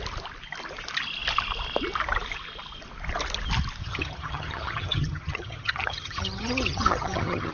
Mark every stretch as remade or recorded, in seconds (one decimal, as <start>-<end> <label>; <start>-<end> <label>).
0.0-3.8 recorded; 3.8-7.5 remade